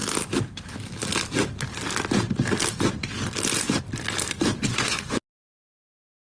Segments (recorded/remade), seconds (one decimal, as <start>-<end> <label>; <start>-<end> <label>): 0.0-4.5 recorded; 4.5-5.2 remade; 5.2-6.3 recorded